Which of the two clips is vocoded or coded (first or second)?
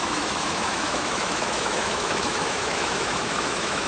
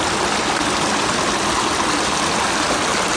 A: first